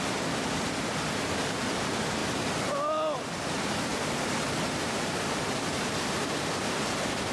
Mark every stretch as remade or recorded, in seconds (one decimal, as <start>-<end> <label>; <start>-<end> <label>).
0.0-2.2 remade; 2.2-3.5 recorded; 3.5-3.9 remade; 3.9-5.7 recorded; 5.7-7.3 remade